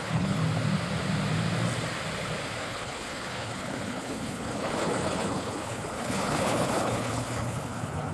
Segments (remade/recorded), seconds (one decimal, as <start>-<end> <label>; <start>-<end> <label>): 0.0-0.4 remade; 0.4-2.6 recorded; 2.6-8.1 remade